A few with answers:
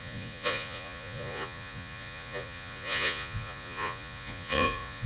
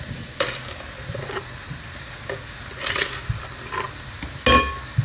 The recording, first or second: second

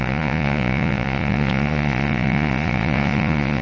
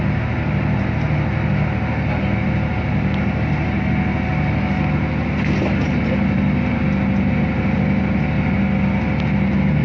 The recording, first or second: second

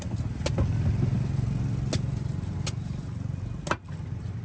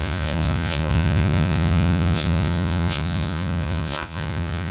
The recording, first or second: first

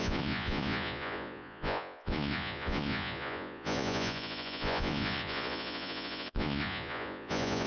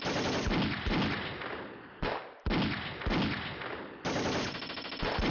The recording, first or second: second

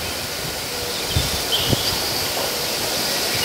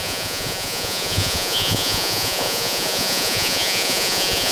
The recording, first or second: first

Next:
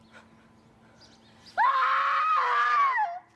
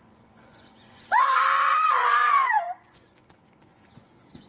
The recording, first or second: first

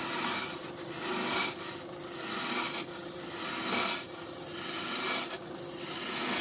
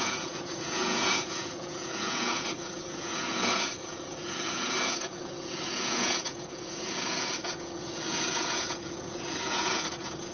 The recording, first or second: first